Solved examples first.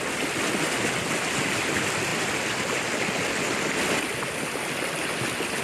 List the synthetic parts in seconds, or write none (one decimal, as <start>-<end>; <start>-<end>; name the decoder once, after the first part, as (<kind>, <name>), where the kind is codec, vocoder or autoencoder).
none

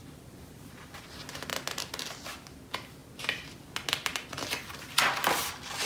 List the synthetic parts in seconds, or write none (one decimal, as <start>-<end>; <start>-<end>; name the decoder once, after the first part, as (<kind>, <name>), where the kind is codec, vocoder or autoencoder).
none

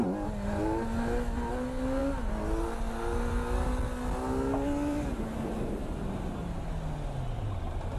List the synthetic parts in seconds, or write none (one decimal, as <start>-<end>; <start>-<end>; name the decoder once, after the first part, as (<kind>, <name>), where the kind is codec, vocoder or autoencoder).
none